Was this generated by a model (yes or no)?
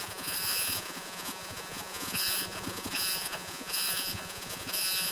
yes